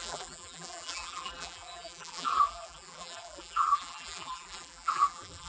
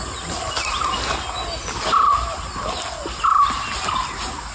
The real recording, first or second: second